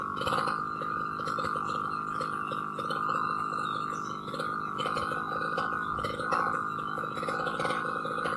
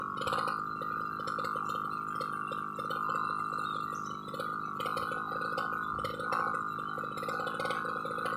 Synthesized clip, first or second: first